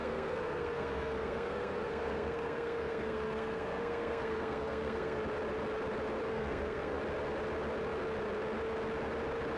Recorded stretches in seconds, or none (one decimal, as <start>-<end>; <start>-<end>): 5.2-6.3; 7.0-9.6